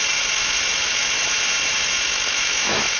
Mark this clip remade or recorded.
remade